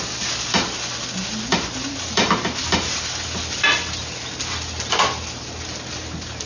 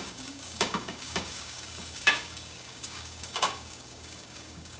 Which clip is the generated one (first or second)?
second